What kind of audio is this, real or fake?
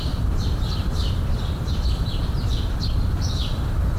fake